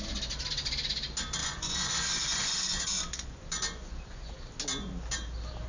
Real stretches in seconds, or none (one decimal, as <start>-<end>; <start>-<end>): 0.0-1.4; 4.3-5.7